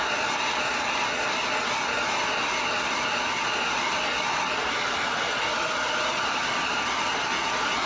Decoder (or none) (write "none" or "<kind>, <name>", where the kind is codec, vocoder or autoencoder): none